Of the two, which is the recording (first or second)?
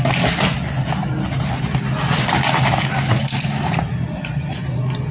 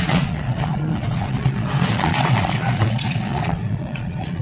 first